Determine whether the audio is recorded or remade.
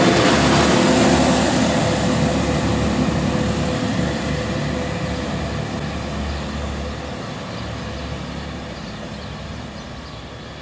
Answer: recorded